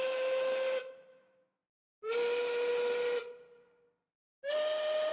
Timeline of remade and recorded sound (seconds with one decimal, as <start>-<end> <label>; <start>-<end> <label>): 0.0-1.6 remade; 1.6-5.1 recorded